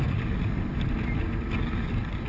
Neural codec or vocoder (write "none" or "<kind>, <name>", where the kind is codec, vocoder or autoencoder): none